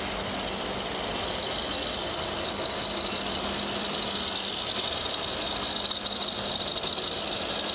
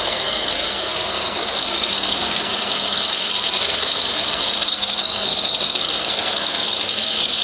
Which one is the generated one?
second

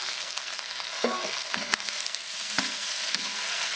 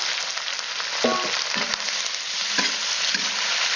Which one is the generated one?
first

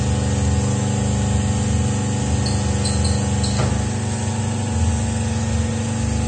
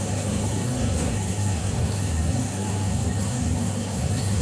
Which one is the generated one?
second